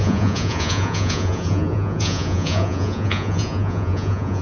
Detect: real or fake fake